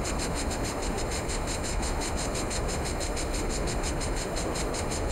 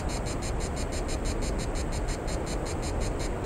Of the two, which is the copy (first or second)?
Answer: first